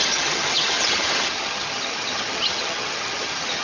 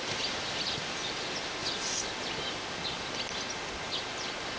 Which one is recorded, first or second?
second